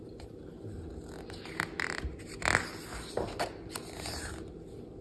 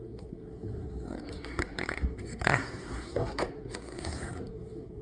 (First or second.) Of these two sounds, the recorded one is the first